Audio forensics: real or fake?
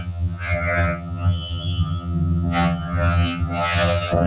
fake